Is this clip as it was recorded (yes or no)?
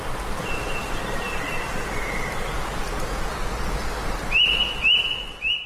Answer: yes